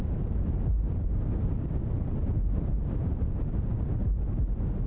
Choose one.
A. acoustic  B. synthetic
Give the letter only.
B